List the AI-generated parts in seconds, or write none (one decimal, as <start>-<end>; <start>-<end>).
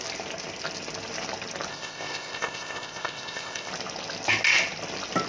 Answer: 1.7-3.7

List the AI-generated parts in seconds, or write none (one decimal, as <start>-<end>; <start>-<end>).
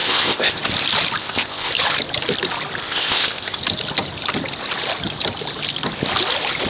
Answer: 0.0-0.6; 1.2-1.7; 2.8-3.6